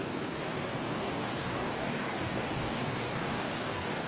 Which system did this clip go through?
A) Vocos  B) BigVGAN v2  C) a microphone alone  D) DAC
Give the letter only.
D